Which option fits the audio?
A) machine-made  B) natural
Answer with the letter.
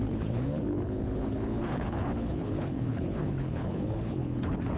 A